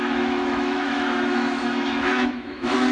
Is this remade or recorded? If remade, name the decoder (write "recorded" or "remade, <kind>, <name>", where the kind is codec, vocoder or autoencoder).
remade, autoencoder, DAC-VAE